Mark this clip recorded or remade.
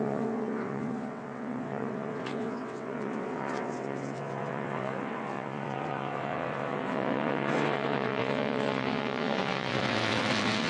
remade